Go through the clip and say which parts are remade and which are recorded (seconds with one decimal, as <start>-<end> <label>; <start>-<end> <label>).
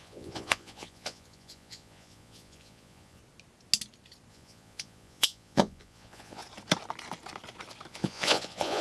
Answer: 0.0-3.2 remade; 3.2-4.3 recorded; 4.3-6.4 remade; 6.4-7.9 recorded; 7.9-8.8 remade